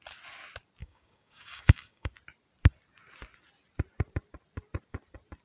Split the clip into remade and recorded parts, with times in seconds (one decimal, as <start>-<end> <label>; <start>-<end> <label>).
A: 0.0-0.8 recorded; 0.8-2.1 remade; 2.1-5.4 recorded